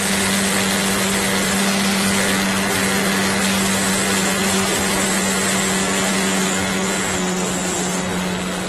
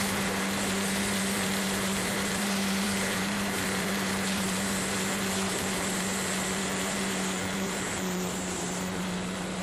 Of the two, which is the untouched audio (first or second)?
first